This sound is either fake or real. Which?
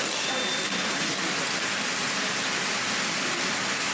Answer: real